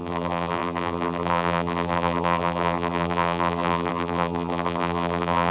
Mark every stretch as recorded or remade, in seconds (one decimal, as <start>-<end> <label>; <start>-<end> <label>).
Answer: 0.0-5.5 remade